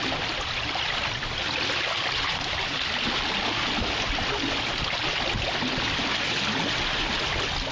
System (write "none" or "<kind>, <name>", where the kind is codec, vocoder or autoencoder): none